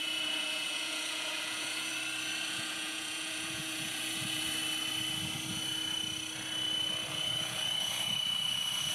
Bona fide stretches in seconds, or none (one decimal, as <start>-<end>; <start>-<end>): 1.9-2.5; 4.6-7.1